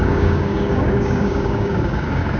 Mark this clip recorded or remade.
remade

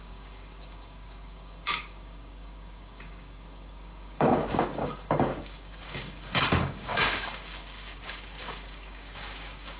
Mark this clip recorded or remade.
remade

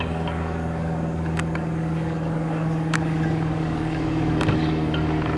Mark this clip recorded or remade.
remade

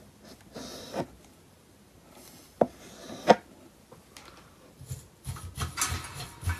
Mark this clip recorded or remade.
recorded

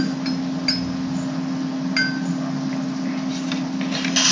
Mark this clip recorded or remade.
recorded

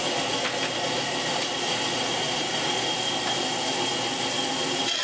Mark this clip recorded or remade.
recorded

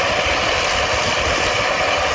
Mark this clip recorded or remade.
recorded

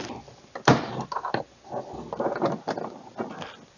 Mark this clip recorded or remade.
recorded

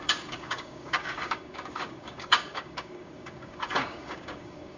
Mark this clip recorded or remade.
remade